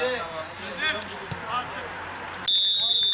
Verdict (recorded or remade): recorded